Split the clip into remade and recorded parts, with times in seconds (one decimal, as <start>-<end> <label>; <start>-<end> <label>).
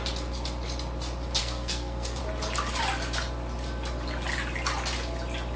0.0-1.4 recorded; 1.4-2.2 remade; 2.2-5.6 recorded